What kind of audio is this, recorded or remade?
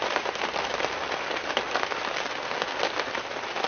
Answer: recorded